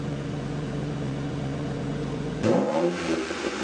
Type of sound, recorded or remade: remade